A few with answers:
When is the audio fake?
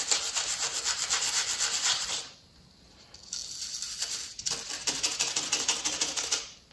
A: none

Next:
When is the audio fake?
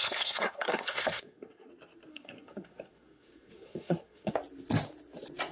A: 0.0-1.7 (codec, SNAC); 2.1-4.3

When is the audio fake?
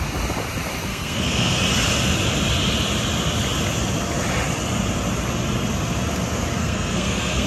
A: 0.9-1.6 (codec, SNAC); 6.6-7.5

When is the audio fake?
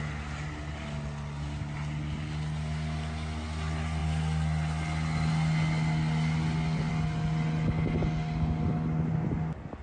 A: none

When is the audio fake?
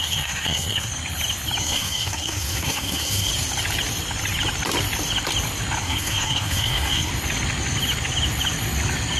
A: 0.0-0.9 (codec, SNAC); 1.6-3.3; 5.8-7.1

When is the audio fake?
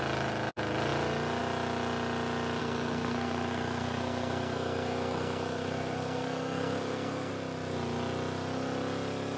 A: 2.6-7.3 (codec, SNAC)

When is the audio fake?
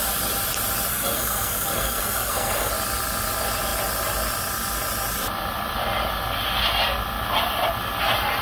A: 0.9-2.7 (codec, SNAC)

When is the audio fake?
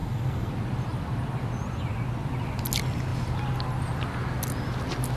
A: 0.0-0.5 (codec, SNAC)